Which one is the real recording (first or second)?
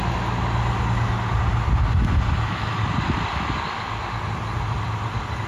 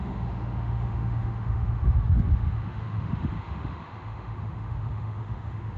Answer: first